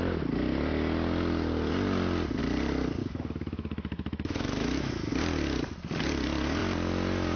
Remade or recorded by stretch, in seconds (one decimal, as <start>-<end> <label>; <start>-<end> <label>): 0.0-3.0 recorded; 3.0-5.1 remade; 5.1-7.4 recorded